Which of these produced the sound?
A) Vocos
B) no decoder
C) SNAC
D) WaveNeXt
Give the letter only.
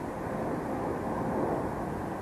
B